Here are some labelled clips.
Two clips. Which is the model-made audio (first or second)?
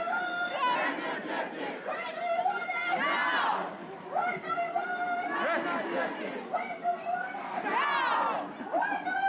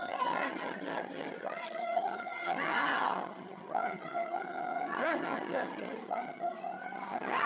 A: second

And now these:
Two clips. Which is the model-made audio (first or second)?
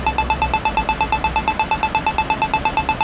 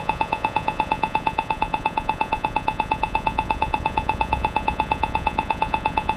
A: second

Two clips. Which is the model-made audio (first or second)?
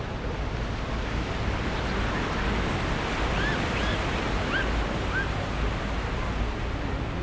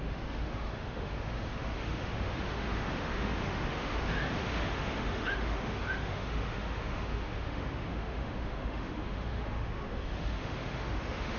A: second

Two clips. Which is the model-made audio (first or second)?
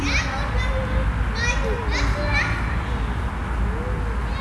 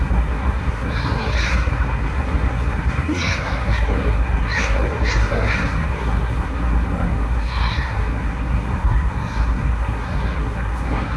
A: second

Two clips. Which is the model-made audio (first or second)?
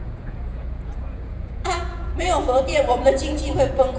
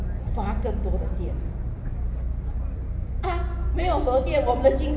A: first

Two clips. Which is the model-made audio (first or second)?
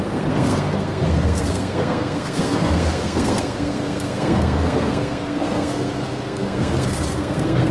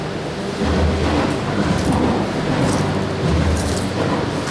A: first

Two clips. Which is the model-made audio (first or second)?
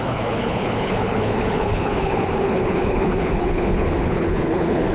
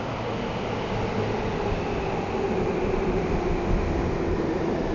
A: first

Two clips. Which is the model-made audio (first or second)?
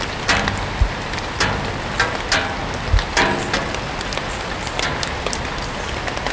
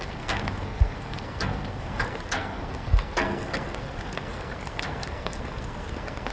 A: second